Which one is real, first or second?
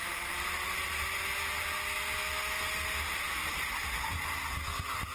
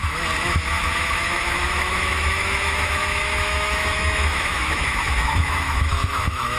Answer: first